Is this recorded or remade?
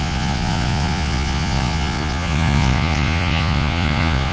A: remade